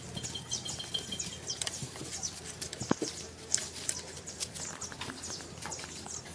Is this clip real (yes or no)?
yes